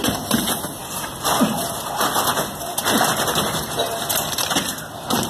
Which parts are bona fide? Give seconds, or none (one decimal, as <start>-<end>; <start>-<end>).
0.0-5.3